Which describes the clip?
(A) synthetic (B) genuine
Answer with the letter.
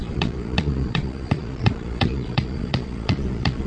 A